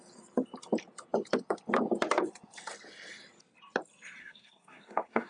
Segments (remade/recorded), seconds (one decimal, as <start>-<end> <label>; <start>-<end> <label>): 0.0-4.2 recorded; 4.2-5.3 remade